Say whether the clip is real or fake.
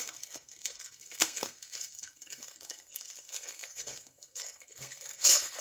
fake